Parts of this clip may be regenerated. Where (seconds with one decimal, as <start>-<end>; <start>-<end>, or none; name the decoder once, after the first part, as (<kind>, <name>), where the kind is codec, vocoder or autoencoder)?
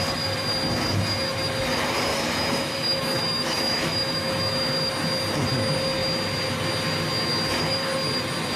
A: 2.1-4.9 (autoencoder, DAC-VAE)